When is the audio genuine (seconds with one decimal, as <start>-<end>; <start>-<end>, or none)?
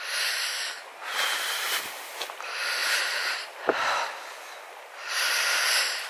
0.0-1.1; 1.8-2.8; 4.1-6.1